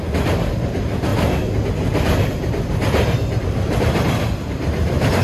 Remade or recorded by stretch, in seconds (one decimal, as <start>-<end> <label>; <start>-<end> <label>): 0.0-5.2 recorded